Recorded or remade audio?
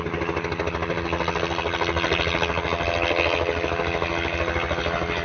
recorded